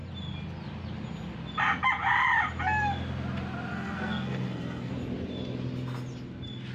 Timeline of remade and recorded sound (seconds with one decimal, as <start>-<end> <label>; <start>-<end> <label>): 0.0-3.7 recorded; 3.7-4.9 remade; 4.9-6.7 recorded